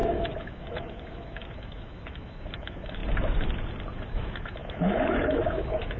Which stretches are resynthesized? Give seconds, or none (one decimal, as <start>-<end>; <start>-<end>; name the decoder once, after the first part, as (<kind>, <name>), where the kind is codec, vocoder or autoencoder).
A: 0.0-3.0 (autoencoder, DAC-VAE); 4.1-6.0